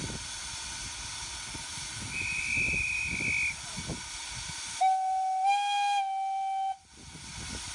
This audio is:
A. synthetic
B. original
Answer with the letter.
B